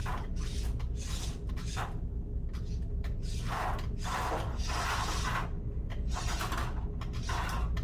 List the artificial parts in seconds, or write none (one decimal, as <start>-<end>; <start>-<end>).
none